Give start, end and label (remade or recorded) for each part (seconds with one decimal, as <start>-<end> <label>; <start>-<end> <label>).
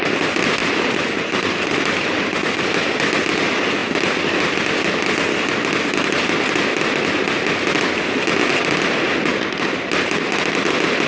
0.0-0.6 recorded; 0.6-2.7 remade; 2.7-9.3 recorded; 9.3-9.9 remade; 9.9-11.1 recorded